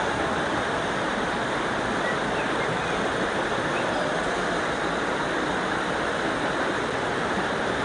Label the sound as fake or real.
real